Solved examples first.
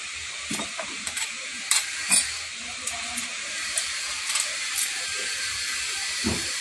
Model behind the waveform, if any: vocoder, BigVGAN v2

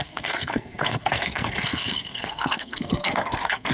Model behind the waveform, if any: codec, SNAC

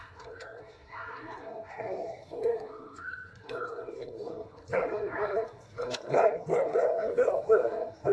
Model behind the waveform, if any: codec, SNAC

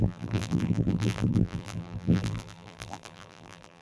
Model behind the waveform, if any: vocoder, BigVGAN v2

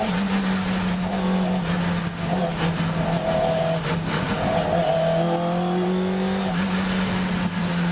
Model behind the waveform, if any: none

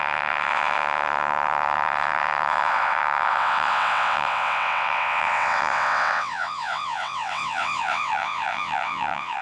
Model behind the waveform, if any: vocoder, WaveNeXt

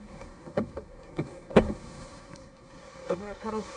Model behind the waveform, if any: codec, SNAC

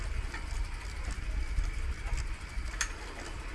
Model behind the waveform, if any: none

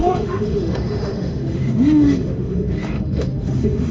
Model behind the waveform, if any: autoencoder, DAC-VAE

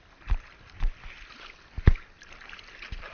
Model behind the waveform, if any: none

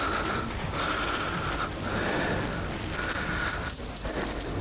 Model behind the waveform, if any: none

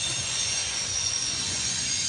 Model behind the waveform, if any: vocoder, Vocos